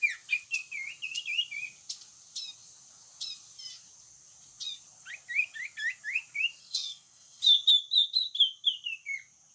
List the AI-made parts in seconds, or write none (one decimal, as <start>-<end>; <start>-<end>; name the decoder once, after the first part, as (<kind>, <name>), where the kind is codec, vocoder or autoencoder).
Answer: 6.6-7.4 (codec, SNAC)